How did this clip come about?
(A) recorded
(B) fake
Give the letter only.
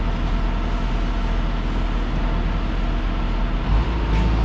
A